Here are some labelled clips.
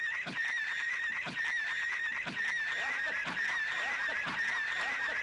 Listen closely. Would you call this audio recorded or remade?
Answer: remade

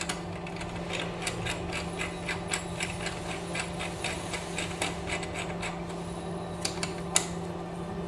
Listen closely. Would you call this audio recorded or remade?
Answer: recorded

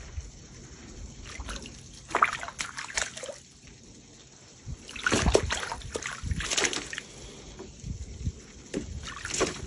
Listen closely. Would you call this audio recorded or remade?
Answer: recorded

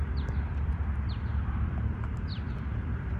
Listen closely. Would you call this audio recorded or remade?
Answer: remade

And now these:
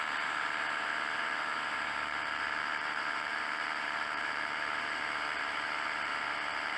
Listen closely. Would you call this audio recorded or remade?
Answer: remade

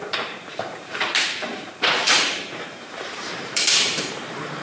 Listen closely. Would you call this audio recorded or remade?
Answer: remade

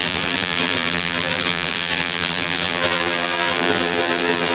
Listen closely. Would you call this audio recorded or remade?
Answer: remade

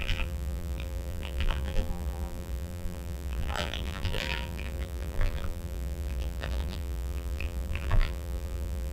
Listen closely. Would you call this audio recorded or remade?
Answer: remade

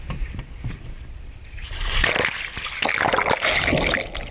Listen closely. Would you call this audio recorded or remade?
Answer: recorded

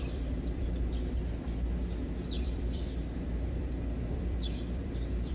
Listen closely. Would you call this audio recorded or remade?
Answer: remade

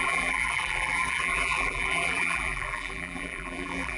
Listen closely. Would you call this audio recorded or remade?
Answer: remade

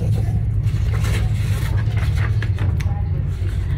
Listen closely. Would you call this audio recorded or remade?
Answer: recorded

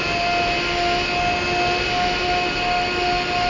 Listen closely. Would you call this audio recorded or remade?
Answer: recorded